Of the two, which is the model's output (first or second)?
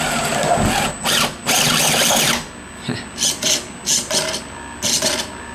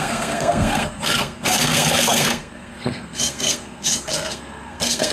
second